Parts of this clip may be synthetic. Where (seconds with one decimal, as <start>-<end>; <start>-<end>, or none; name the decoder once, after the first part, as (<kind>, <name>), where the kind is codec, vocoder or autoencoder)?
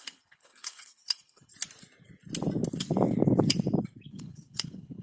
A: 0.0-1.5 (codec, HILCodec); 4.1-5.0